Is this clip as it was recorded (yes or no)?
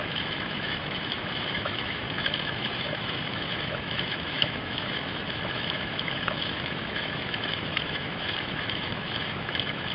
no